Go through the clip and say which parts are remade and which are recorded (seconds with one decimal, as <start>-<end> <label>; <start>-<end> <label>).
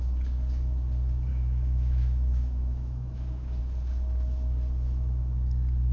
0.0-1.3 recorded; 1.3-3.6 remade; 3.6-5.9 recorded